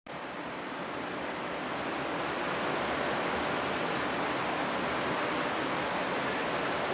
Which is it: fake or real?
real